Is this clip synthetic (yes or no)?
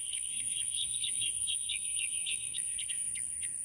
yes